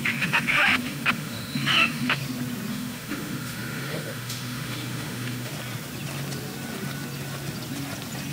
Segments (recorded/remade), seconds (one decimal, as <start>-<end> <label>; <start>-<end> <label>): 0.0-2.2 remade; 2.2-2.7 recorded; 2.7-5.5 remade; 5.5-8.3 recorded